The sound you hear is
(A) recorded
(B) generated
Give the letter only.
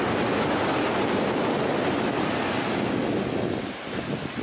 A